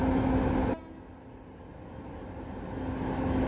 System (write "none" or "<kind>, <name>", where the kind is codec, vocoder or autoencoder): none